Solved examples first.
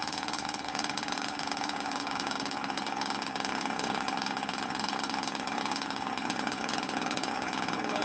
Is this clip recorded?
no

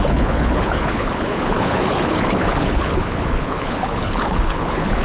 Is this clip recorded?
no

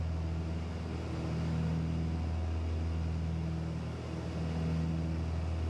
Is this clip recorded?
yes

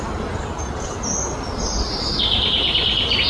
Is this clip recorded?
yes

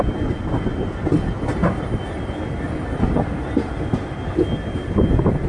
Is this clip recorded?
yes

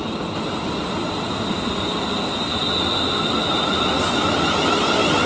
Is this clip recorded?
yes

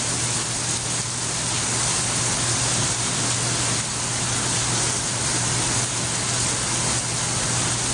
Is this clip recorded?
yes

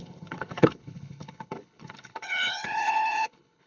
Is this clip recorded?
no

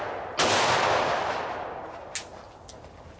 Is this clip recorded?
yes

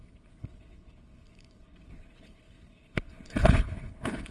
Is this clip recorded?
no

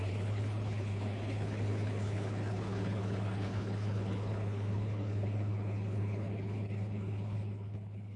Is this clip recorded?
no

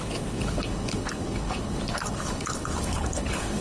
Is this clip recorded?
no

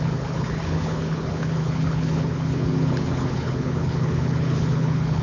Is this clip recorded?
no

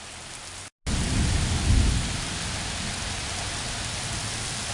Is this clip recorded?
yes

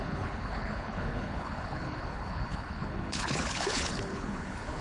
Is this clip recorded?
no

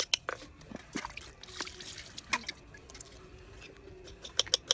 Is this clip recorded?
yes